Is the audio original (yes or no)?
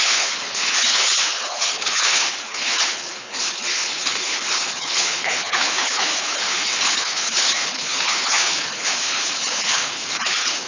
no